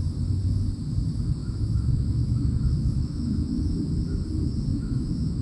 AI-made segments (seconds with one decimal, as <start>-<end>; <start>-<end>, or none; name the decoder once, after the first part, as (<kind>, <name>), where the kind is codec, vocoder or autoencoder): 1.4-3.8 (autoencoder, DAC-VAE); 4.7-5.4

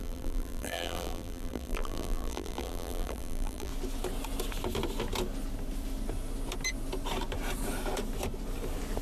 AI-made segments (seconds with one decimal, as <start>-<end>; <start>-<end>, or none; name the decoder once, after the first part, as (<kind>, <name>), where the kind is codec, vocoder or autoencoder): 0.0-3.7 (vocoder, BigVGAN v2)

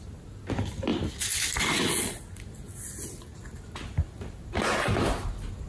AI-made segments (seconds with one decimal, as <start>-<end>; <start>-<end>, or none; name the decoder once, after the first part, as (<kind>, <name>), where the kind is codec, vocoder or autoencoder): none

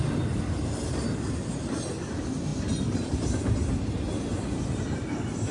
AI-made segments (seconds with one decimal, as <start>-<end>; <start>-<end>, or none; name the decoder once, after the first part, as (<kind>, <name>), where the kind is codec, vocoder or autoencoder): none